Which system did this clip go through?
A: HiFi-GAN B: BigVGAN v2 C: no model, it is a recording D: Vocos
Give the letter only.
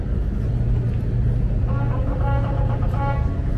C